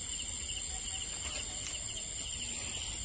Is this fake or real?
real